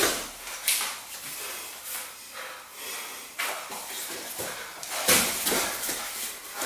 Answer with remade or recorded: recorded